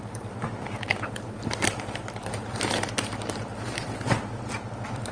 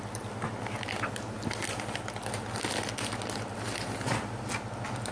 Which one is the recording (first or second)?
second